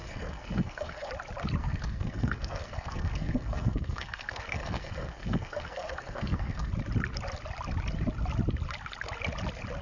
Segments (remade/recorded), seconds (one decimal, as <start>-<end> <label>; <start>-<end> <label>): 0.0-1.1 remade; 1.1-1.6 recorded; 1.6-6.7 remade; 6.7-9.8 recorded